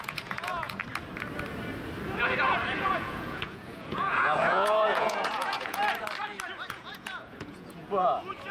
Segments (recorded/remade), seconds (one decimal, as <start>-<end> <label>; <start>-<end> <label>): 0.0-0.8 remade; 0.8-2.8 recorded; 2.8-5.8 remade; 5.8-6.7 recorded; 6.7-8.5 remade